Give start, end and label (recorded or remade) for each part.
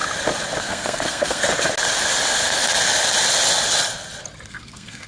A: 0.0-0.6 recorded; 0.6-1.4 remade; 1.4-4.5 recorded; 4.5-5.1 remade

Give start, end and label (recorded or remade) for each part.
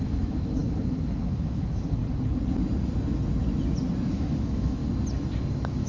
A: 0.0-2.0 remade; 2.0-4.1 recorded; 4.1-4.8 remade; 4.8-5.5 recorded; 5.5-5.9 remade